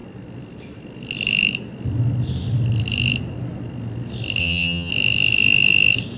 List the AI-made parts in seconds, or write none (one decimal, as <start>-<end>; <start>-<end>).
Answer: 4.4-4.9